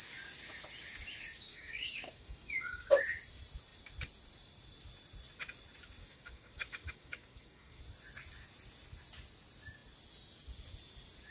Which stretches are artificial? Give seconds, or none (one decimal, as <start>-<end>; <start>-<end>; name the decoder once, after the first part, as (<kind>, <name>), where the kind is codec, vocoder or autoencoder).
1.5-2.9 (codec, DAC); 6.0-7.8